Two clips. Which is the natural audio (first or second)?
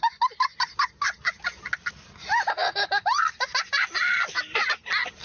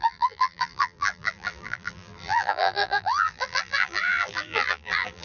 first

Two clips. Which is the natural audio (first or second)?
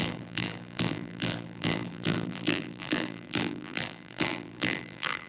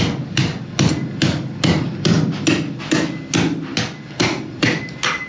second